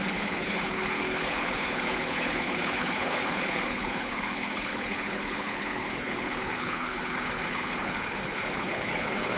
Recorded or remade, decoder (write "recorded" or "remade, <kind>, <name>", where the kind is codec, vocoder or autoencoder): remade, codec, HILCodec